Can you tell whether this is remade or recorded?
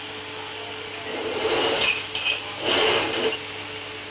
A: recorded